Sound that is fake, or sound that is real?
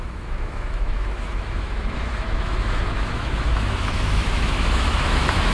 fake